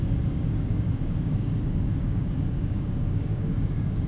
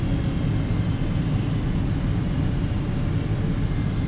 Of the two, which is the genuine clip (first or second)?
second